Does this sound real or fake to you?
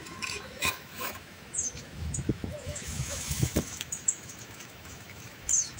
fake